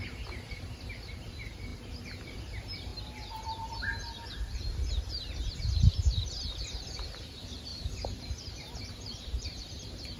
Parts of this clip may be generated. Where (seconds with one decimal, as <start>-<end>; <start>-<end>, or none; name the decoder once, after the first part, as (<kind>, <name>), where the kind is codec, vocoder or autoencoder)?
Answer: 0.0-2.9 (vocoder, BigVGAN v2); 5.1-10.2